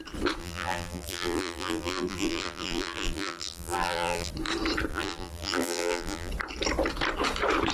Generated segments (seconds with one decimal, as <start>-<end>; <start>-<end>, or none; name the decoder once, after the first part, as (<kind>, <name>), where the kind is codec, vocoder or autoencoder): 0.4-4.3 (vocoder, BigVGAN v2); 4.9-6.3